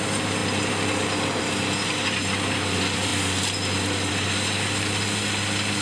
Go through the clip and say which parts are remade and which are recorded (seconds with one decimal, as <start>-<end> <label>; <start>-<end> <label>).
0.0-5.8 recorded